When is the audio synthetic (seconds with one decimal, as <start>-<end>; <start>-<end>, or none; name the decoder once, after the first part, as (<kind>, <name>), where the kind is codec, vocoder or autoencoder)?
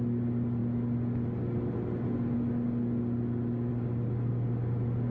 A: none